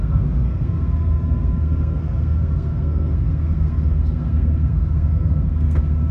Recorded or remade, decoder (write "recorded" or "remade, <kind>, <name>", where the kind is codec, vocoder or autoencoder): remade, codec, SNAC